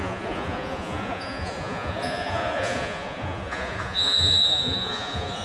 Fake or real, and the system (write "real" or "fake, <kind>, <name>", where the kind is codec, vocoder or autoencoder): fake, vocoder, Vocos